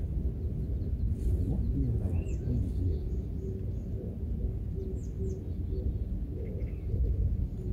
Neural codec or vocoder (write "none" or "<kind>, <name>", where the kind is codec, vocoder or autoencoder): none